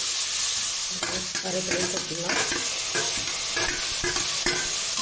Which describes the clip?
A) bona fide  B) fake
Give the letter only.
A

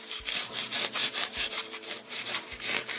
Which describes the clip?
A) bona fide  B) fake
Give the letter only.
B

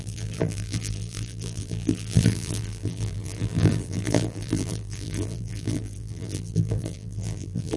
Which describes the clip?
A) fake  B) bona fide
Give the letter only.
A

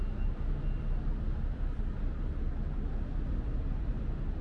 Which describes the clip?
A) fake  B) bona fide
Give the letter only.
B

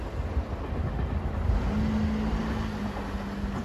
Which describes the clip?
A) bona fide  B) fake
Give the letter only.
A